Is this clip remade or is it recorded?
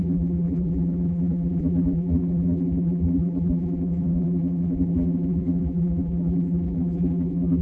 remade